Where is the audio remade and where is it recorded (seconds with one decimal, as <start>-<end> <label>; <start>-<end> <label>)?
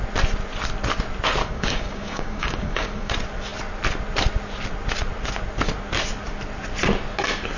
0.0-1.4 recorded; 1.4-3.1 remade; 3.1-7.6 recorded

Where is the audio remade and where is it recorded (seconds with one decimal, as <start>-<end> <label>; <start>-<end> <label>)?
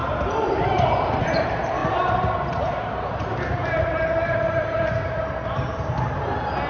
0.0-6.7 remade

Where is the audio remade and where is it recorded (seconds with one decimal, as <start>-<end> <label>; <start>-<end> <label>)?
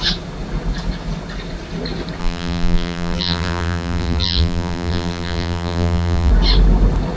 0.0-2.2 recorded; 2.2-6.3 remade; 6.3-7.2 recorded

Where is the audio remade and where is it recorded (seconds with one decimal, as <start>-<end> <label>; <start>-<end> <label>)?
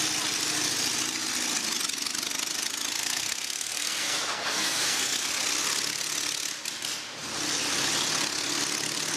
0.0-3.0 recorded; 3.0-5.3 remade; 5.3-9.2 recorded